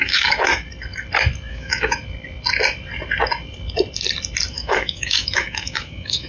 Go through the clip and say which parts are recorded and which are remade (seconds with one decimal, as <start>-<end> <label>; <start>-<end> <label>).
0.0-0.5 remade; 0.5-1.5 recorded; 1.5-2.0 remade; 2.0-4.5 recorded; 4.5-6.3 remade